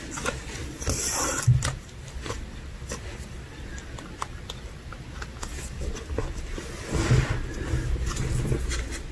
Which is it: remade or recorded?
recorded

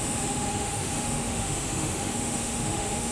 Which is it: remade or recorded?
remade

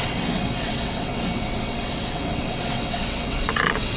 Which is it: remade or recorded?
remade